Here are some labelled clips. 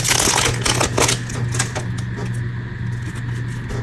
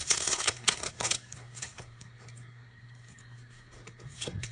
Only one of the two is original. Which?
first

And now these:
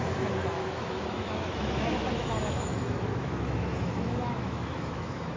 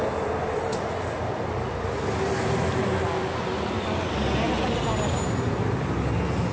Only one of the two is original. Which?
second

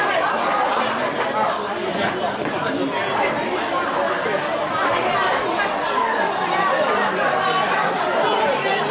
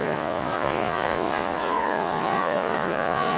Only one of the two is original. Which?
first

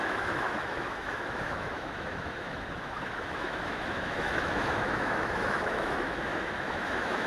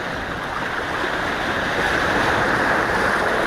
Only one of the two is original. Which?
second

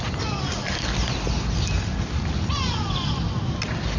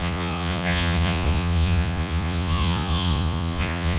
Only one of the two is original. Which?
first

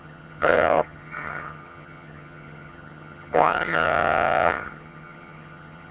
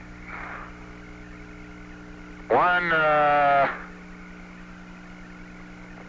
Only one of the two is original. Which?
second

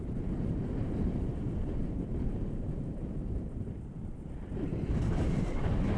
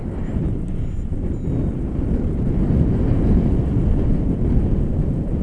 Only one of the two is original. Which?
second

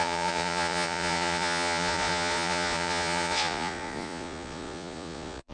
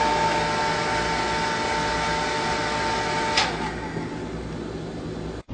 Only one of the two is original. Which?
second